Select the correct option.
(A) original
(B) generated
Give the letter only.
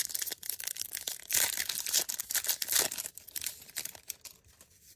A